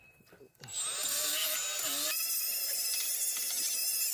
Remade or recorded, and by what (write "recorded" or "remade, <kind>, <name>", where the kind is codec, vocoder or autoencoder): recorded